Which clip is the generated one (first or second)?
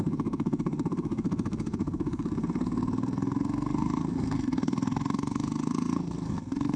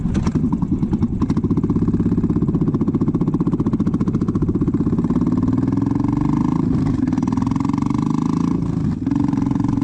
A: first